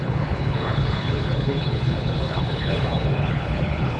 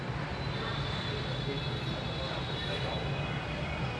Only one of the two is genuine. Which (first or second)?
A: second